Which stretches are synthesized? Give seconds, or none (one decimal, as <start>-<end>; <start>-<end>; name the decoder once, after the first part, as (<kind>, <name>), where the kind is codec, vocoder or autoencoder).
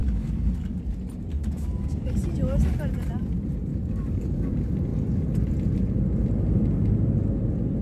0.0-0.8 (codec, DAC); 1.3-2.1; 3.7-4.5